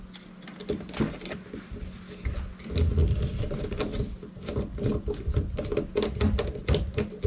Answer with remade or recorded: recorded